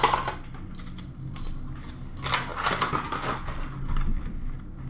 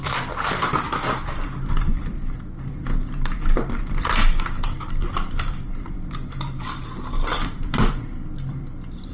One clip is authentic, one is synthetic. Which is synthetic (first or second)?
second